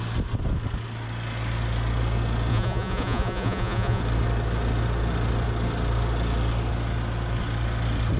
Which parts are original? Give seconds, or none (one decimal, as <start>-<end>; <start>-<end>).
0.0-2.5; 4.0-8.2